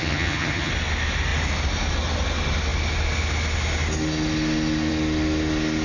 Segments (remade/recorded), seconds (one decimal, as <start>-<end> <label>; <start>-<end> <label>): 0.0-0.7 remade; 0.7-5.8 recorded